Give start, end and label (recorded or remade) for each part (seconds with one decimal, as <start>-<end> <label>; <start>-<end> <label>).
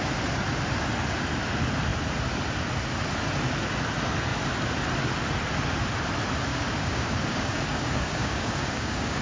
0.0-6.5 recorded; 6.5-9.2 remade